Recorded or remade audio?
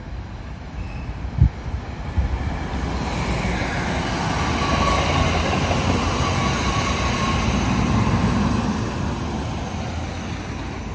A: recorded